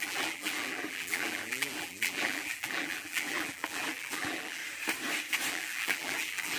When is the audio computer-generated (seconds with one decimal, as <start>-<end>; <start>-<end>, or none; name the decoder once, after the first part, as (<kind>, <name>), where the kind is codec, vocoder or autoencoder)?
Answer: 0.0-4.6 (vocoder, BigVGAN v2); 5.5-6.6